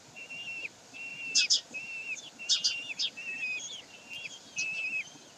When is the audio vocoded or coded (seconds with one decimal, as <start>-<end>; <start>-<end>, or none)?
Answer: none